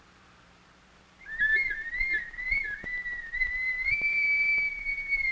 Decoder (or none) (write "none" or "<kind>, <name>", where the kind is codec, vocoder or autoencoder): vocoder, BigVGAN v2